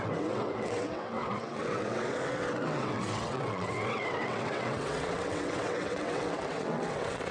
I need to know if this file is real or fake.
fake